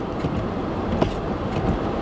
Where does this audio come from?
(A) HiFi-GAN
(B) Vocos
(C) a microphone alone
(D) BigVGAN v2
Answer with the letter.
C